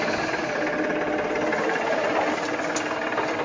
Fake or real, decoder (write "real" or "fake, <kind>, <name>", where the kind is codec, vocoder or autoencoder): real